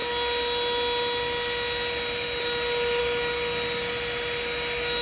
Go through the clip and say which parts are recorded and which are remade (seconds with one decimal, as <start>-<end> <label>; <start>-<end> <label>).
0.0-5.0 recorded

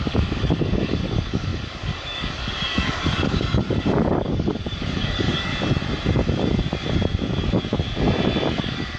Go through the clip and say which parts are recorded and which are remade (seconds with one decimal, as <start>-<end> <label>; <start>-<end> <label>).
0.0-5.5 remade; 5.5-8.6 recorded; 8.6-9.0 remade

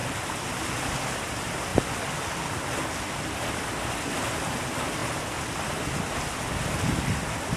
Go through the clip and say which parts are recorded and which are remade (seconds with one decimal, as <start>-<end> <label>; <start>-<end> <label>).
0.0-7.6 recorded

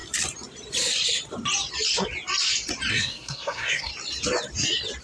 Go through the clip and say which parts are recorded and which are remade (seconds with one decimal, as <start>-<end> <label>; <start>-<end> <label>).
0.0-2.9 recorded; 2.9-3.9 remade; 3.9-5.0 recorded

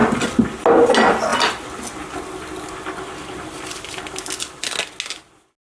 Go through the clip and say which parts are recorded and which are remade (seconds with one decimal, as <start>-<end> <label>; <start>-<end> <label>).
0.0-5.8 recorded

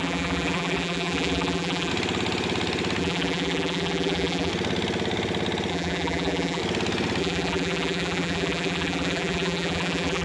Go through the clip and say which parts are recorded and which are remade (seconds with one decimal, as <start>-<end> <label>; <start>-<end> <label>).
0.0-1.9 remade; 1.9-3.0 recorded; 3.0-4.5 remade; 4.5-5.7 recorded; 5.7-6.6 remade; 6.6-7.2 recorded; 7.2-10.2 remade

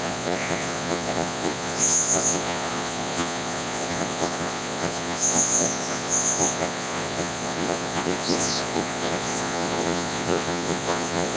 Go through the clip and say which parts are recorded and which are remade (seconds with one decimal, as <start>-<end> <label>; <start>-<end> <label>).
0.0-11.4 remade